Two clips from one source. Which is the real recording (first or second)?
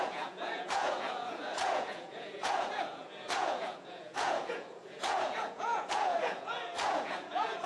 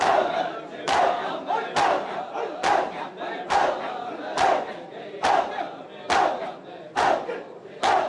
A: second